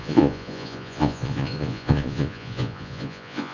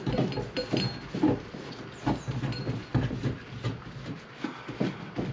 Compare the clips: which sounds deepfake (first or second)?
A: first